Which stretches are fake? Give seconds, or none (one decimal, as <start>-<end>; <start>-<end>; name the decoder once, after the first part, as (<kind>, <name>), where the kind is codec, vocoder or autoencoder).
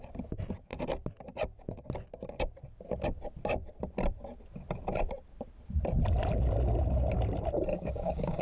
7.7-8.4 (codec, DAC)